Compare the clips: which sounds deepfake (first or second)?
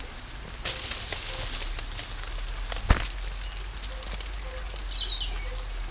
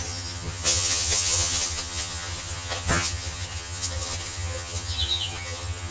second